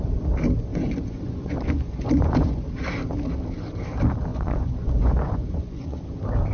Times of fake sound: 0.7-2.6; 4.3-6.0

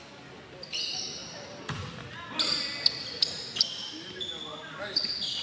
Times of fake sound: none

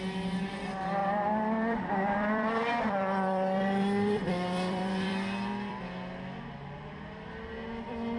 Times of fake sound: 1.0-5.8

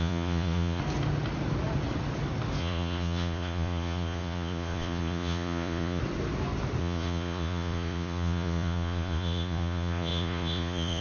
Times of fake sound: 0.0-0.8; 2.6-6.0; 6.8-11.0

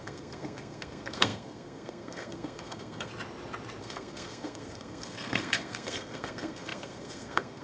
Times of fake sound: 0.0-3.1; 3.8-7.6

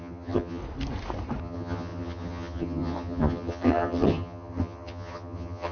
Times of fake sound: 0.0-0.6; 1.4-5.7

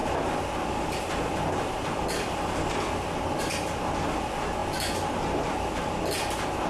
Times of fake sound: none